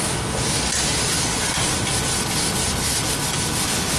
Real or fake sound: real